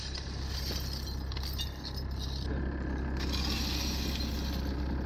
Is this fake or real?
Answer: real